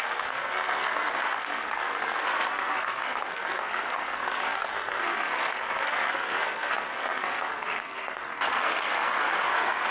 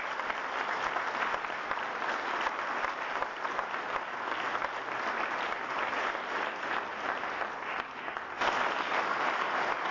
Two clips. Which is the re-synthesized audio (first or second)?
first